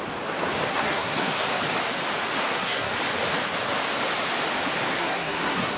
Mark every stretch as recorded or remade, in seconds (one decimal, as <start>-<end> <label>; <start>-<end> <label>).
0.0-0.7 recorded; 0.7-1.6 remade; 1.6-2.4 recorded; 2.4-2.9 remade; 2.9-4.9 recorded; 4.9-5.8 remade